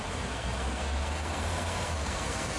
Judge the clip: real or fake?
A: fake